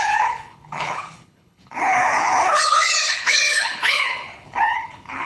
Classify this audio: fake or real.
fake